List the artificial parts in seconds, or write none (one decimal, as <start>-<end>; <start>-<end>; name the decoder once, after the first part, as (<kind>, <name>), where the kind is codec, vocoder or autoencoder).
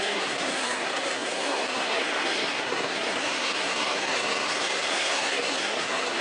0.0-6.2 (codec, SNAC)